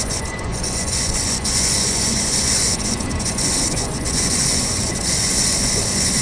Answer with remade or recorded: remade